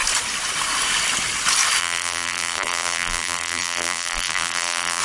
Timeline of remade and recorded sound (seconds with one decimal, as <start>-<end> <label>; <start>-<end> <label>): 0.0-1.8 recorded; 1.8-5.0 remade